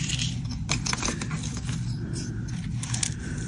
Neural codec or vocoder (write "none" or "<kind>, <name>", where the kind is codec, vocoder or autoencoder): none